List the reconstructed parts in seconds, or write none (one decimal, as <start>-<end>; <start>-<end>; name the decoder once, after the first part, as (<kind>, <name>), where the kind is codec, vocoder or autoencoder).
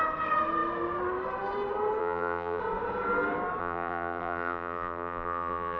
2.0-2.6 (vocoder, BigVGAN v2); 3.6-5.8